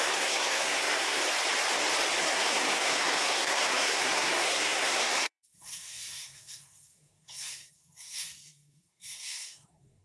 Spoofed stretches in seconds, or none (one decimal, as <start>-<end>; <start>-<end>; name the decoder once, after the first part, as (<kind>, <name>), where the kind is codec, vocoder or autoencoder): 0.0-1.2 (codec, SNAC); 2.2-10.0